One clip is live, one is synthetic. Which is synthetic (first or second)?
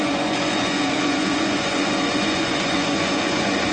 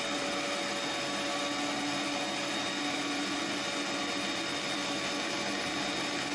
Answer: first